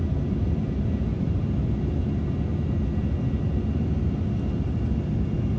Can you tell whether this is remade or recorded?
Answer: recorded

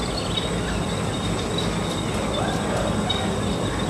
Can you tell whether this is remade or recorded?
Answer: recorded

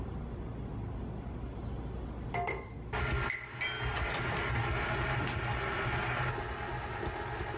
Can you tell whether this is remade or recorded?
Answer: recorded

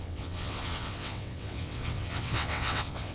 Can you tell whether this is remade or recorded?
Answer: remade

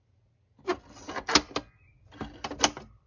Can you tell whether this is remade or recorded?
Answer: recorded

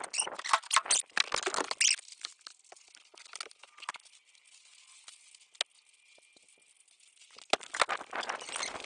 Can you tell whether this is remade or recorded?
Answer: recorded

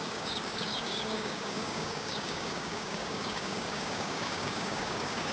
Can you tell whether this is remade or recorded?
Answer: remade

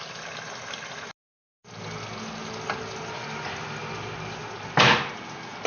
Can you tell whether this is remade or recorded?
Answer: recorded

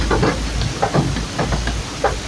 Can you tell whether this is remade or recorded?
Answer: recorded